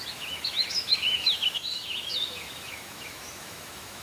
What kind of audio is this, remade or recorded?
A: remade